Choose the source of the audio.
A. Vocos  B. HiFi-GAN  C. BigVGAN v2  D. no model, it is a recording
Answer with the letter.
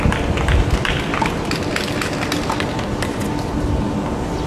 D